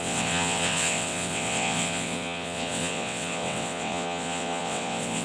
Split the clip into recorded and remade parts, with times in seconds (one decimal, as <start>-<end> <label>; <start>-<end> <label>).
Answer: 0.0-5.2 remade